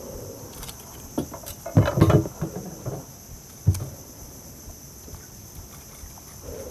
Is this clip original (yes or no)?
yes